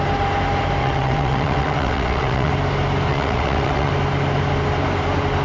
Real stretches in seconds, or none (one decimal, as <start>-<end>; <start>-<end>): 0.0-0.8; 2.5-3.1; 3.9-5.4